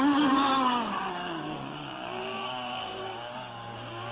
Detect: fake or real fake